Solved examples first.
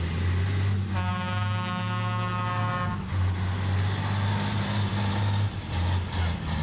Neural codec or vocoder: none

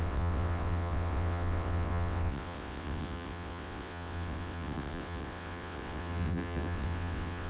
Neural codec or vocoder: vocoder, WaveNeXt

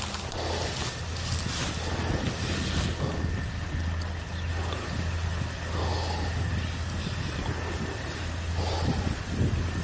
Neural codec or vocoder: none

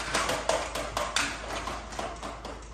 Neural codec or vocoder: none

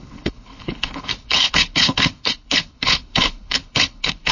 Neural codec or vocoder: codec, HILCodec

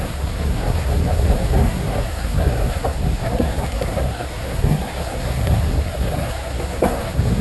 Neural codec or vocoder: codec, SNAC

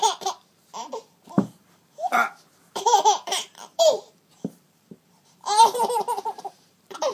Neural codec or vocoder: vocoder, BigVGAN v2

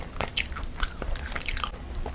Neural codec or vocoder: none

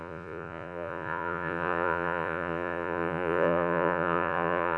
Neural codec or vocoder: vocoder, Vocos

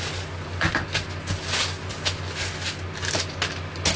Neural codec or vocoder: none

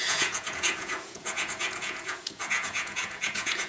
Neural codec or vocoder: vocoder, Vocos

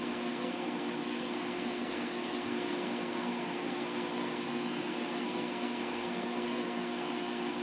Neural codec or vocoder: codec, SNAC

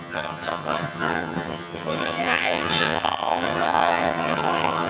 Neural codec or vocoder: vocoder, HiFi-GAN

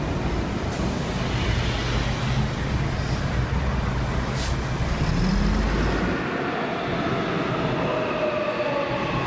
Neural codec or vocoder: none